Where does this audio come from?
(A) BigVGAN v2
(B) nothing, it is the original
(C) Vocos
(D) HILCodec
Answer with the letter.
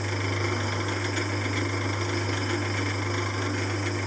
B